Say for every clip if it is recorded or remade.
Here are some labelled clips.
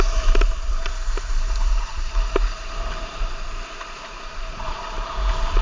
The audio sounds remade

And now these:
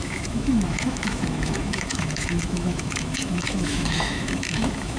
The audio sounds remade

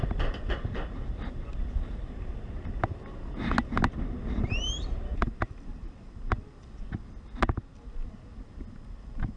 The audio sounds recorded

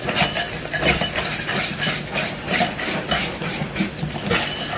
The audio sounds recorded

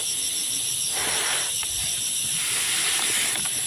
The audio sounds recorded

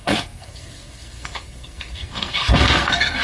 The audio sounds remade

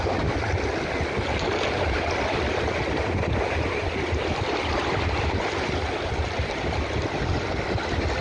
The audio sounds recorded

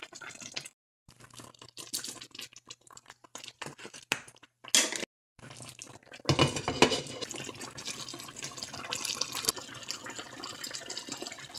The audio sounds recorded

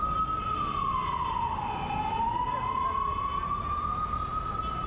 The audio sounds recorded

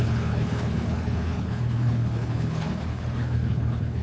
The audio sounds remade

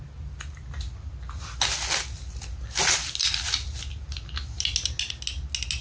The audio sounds recorded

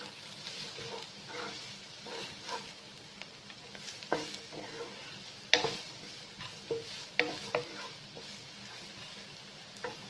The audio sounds recorded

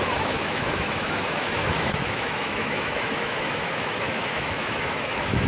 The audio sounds remade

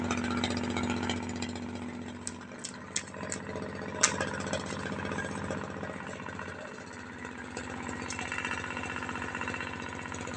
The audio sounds recorded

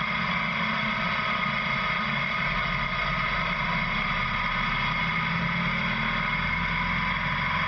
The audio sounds recorded